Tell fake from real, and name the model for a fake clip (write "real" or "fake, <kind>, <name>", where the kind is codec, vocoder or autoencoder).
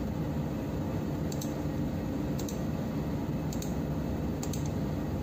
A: fake, vocoder, BigVGAN v2